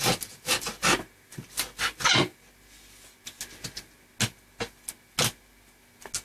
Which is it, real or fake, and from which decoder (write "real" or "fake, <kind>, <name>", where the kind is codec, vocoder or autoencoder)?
real